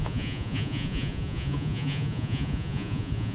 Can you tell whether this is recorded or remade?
remade